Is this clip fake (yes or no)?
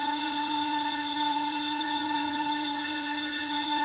yes